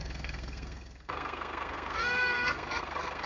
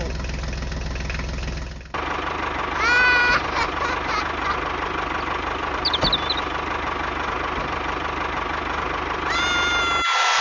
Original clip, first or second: second